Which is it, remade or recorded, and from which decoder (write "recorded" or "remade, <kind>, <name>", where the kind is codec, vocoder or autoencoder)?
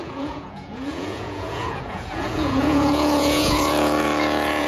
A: remade, vocoder, Vocos